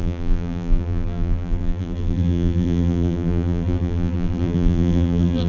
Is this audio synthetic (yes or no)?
yes